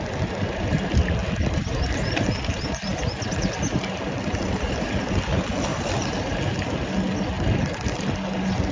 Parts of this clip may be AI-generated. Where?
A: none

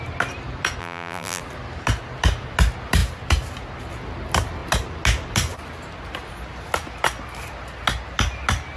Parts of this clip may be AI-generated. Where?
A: 0.8-1.4 (vocoder, BigVGAN v2)

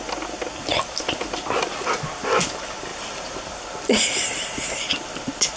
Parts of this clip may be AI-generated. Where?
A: 2.9-3.4 (vocoder, BigVGAN v2)

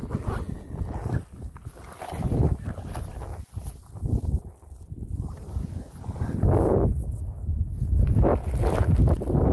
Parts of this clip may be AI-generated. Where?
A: none

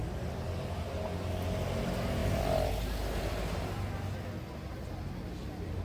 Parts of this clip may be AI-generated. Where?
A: none

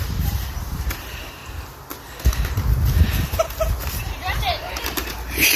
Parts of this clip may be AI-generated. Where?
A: 0.0-1.4 (vocoder, BigVGAN v2); 4.1-5.6

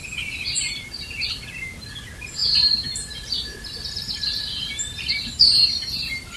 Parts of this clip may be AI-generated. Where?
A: 0.0-0.7 (vocoder, BigVGAN v2); 2.4-6.4